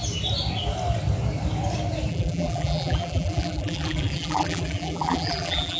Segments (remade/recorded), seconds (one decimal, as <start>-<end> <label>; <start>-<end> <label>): 0.0-2.1 recorded; 2.1-5.8 remade